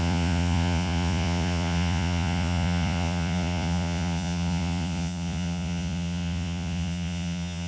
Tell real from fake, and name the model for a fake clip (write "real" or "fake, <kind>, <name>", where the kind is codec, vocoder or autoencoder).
fake, vocoder, Vocos